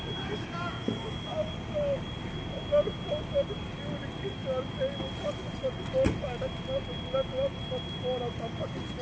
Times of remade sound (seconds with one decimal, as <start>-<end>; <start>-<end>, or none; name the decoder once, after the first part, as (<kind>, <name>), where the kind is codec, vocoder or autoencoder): none